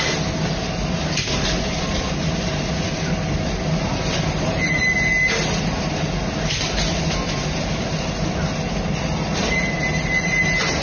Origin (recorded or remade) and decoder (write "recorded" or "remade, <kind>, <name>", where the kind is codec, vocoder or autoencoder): recorded